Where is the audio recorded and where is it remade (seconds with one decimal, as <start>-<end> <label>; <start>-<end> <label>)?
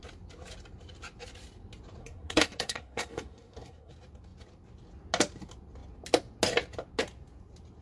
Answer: 0.0-2.0 recorded; 2.0-3.9 remade; 3.9-7.8 recorded